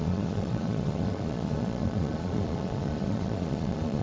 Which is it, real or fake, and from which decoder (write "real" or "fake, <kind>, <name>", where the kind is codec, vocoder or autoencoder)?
fake, vocoder, Vocos